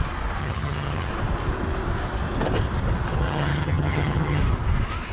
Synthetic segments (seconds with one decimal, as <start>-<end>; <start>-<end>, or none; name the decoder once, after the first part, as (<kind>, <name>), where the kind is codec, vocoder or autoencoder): 0.4-1.1 (vocoder, HiFi-GAN); 3.2-4.4